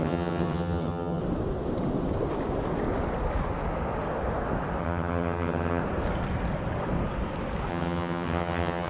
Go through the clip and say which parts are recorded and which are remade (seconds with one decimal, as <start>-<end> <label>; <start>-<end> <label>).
0.0-1.2 remade; 1.2-4.8 recorded; 4.8-5.8 remade; 5.8-7.7 recorded; 7.7-8.9 remade